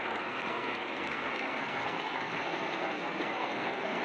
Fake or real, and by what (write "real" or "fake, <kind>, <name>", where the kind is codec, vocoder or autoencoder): fake, codec, SNAC